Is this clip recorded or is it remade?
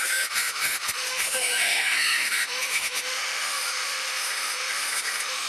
remade